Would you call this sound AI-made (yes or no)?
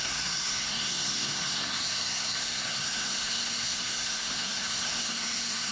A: yes